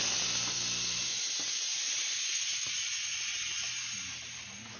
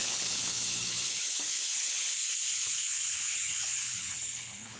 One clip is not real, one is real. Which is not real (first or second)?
second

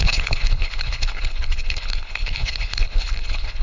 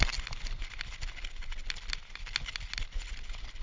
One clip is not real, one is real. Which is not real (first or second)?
first